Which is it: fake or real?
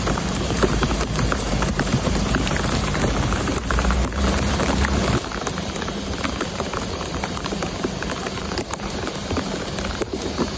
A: fake